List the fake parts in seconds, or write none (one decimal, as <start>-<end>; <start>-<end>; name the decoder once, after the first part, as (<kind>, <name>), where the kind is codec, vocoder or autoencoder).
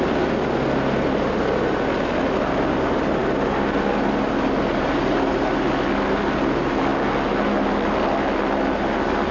none